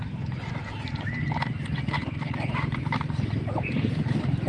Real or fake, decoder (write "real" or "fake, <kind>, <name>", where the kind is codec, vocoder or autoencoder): real